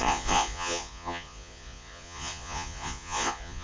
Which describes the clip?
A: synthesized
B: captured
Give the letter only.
A